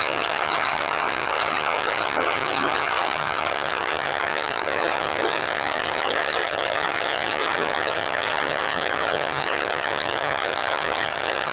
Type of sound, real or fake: fake